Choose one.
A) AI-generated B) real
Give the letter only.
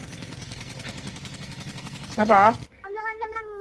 A